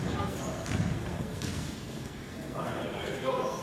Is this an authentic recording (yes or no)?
no